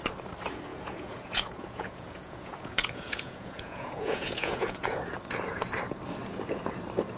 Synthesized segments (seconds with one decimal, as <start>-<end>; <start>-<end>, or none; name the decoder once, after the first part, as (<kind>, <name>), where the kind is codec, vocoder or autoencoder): 0.7-5.0 (vocoder, Vocos)